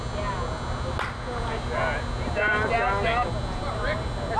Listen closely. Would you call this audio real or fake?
real